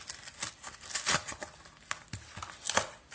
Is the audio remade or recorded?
recorded